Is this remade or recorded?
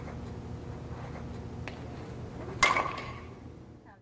recorded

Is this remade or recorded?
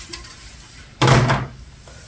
recorded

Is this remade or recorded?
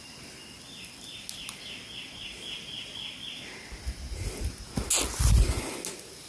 recorded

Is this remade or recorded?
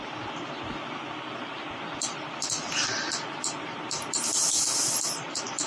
recorded